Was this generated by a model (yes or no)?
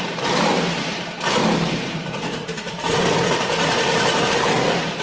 yes